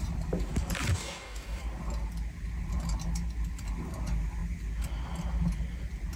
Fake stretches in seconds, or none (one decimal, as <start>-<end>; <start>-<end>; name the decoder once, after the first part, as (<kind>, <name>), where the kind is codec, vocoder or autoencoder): 0.9-1.6 (codec, DAC)